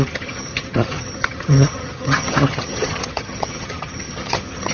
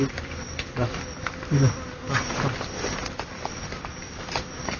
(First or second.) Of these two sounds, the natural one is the second